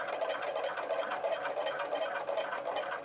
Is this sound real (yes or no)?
yes